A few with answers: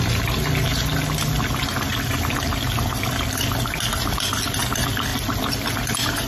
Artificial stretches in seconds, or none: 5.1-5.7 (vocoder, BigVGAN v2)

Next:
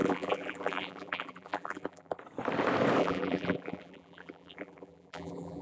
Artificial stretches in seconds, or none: 0.0-2.2 (vocoder, BigVGAN v2); 3.0-5.6

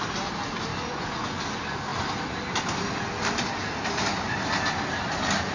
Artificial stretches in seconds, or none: 0.7-1.4 (vocoder, Vocos)